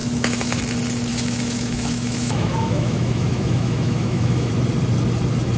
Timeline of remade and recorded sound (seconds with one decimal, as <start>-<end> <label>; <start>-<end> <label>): 0.0-0.6 remade; 0.6-1.1 recorded; 1.1-4.5 remade; 4.5-5.6 recorded